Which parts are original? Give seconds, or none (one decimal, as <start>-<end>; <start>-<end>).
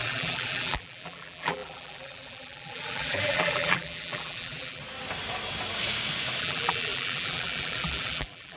4.8-6.4